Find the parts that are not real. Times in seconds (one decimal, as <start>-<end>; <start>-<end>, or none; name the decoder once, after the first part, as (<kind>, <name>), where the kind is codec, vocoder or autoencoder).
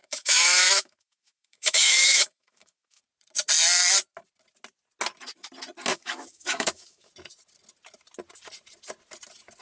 0.0-3.0 (autoencoder, DAC-VAE); 5.9-7.1